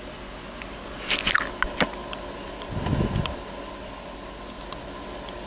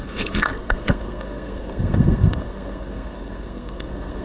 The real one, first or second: first